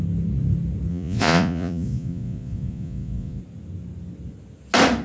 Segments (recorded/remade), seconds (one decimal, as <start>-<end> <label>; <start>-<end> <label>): 0.0-0.9 recorded; 0.9-3.4 remade; 3.4-5.0 recorded